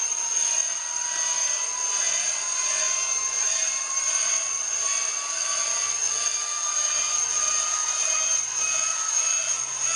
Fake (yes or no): no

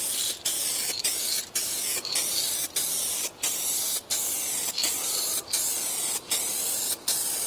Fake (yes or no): no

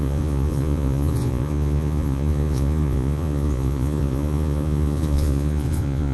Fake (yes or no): yes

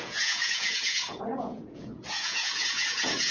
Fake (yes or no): yes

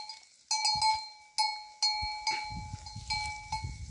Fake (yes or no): no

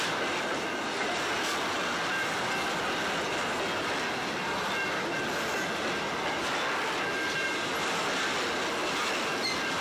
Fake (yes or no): no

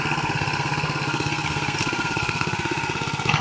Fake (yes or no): yes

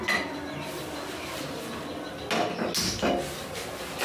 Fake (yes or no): no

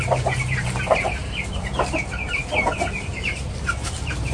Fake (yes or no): yes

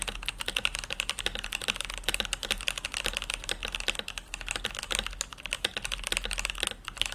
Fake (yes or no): no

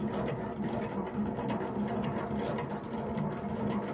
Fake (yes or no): no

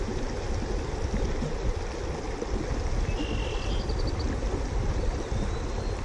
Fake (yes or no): no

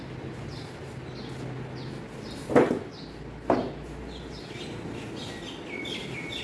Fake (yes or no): no